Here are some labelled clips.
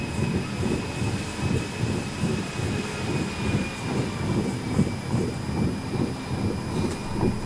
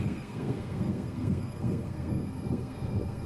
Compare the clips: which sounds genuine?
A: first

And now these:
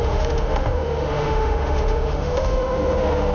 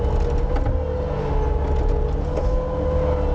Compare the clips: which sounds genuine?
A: second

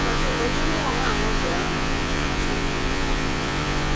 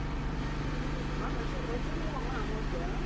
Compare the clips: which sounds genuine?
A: second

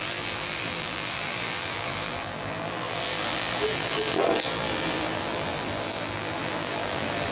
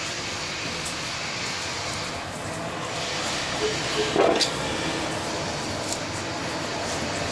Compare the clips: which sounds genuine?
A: second